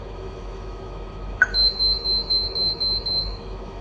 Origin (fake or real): fake